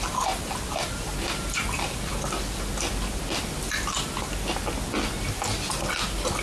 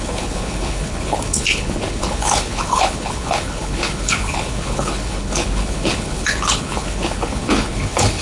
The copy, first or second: second